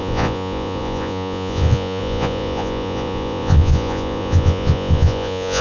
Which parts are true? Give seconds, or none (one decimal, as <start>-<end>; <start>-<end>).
none